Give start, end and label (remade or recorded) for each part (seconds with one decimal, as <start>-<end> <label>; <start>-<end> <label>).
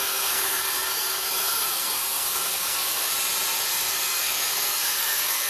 0.0-3.1 remade; 3.1-3.7 recorded; 3.7-5.5 remade